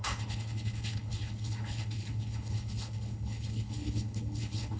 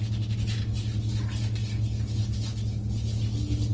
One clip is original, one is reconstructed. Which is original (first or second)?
second